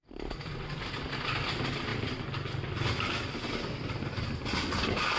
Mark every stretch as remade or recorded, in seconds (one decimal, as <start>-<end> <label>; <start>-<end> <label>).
0.0-5.2 recorded